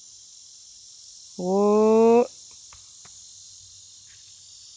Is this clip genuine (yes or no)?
yes